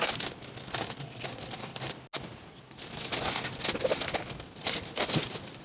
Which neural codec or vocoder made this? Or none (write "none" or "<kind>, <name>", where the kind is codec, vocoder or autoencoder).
none